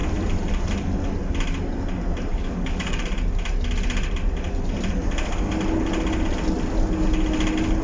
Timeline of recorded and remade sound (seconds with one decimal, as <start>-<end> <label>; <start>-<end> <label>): 0.0-2.3 recorded; 2.3-3.0 remade; 3.0-7.8 recorded